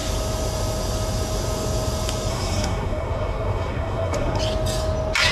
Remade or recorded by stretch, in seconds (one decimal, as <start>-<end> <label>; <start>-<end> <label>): 0.0-2.3 recorded; 2.3-4.4 remade; 4.4-5.3 recorded